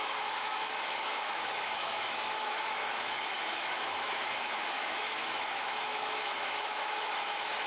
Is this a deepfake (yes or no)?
yes